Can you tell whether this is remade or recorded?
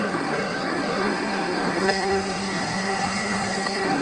remade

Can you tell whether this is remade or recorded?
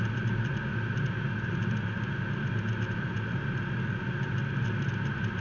recorded